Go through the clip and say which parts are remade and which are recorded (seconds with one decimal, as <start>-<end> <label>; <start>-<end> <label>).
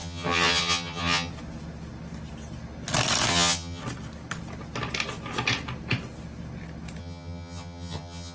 0.0-1.3 remade; 1.3-3.3 recorded; 3.3-3.8 remade; 3.8-7.0 recorded; 7.0-8.3 remade